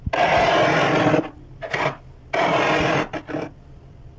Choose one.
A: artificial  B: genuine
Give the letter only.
B